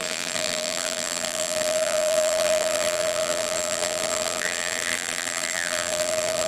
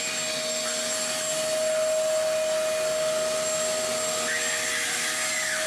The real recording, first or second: second